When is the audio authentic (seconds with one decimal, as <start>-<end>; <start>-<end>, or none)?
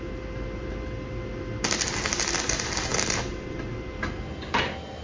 0.0-5.0